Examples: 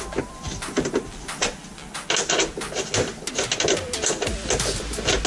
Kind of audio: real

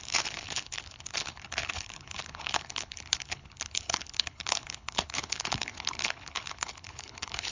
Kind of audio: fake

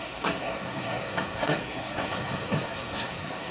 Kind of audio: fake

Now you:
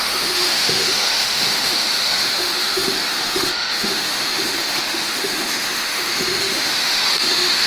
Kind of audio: fake